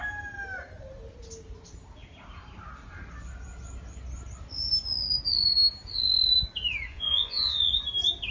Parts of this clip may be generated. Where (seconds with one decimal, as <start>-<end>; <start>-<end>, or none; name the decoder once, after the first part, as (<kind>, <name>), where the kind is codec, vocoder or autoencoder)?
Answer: 6.9-7.7 (vocoder, Vocos)